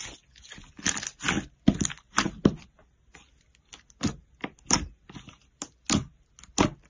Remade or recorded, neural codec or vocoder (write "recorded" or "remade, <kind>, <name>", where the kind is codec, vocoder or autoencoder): recorded